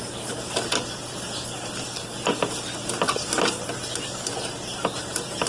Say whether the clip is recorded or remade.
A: recorded